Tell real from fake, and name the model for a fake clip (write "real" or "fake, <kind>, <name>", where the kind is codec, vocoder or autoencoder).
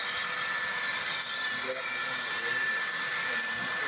real